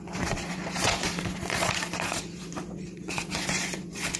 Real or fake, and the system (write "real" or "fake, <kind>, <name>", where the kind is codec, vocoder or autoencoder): fake, vocoder, Vocos